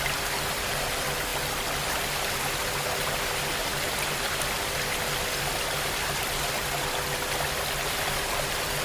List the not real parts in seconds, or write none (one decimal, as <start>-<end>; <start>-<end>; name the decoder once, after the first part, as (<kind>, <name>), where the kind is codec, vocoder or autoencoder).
none